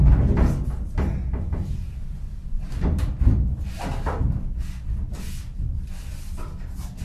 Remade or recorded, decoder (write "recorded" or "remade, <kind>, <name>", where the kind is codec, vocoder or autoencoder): recorded